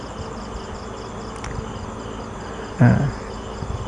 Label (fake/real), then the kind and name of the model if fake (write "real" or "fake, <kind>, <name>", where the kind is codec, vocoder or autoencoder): real